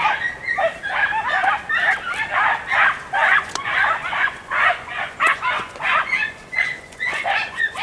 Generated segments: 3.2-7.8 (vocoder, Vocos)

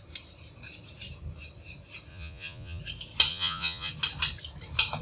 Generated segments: 2.1-2.8 (vocoder, Vocos); 3.3-3.9

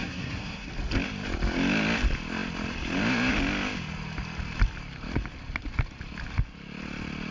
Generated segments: 0.0-0.7 (codec, SNAC)

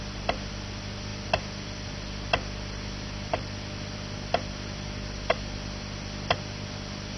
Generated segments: none